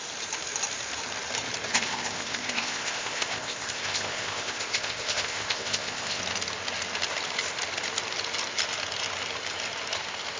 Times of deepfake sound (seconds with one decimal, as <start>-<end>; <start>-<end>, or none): 1.7-6.2